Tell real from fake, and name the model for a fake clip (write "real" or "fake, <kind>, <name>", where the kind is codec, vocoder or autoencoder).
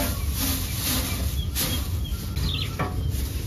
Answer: real